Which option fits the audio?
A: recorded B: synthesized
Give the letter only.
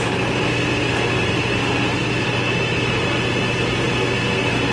A